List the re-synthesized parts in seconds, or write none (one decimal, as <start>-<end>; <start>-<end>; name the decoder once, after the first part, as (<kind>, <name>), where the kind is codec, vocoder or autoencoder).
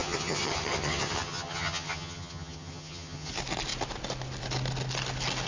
0.0-3.3 (vocoder, HiFi-GAN)